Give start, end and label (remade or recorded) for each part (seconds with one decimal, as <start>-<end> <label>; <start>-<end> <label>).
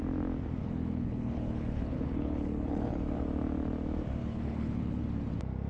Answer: 0.0-0.6 recorded; 0.6-3.0 remade; 3.0-4.2 recorded; 4.2-5.0 remade; 5.0-5.7 recorded